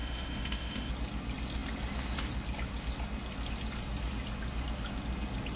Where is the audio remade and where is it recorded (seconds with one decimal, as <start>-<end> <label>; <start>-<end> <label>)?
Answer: 0.0-0.9 remade; 0.9-5.6 recorded